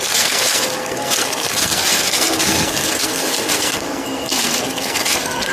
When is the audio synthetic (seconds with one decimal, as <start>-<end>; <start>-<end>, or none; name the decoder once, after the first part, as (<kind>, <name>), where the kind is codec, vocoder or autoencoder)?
0.0-5.5 (codec, SNAC)